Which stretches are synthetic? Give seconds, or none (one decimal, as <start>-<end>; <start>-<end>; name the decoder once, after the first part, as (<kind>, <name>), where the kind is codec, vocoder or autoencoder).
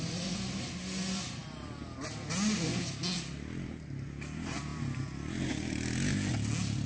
none